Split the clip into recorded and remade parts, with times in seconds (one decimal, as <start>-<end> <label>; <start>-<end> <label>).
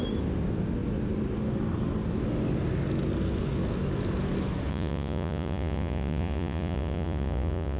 0.0-4.7 recorded; 4.7-7.8 remade